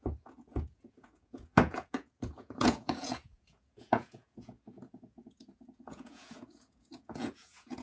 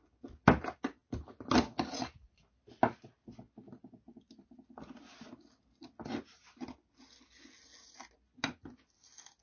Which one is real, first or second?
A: second